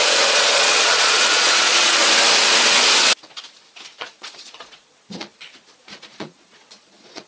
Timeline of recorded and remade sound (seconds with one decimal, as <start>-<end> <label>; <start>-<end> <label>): 0.0-2.0 remade; 2.0-4.0 recorded; 4.0-7.3 remade